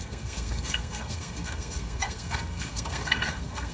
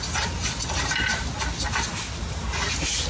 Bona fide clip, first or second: second